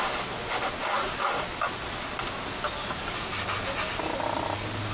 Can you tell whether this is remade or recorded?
recorded